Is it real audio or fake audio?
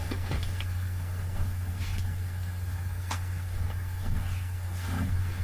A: fake